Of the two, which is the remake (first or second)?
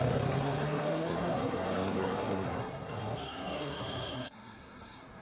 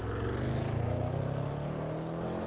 first